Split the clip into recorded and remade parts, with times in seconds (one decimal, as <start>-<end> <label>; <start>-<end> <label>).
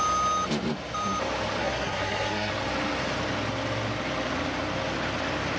0.0-1.6 recorded; 1.6-2.5 remade; 2.5-5.6 recorded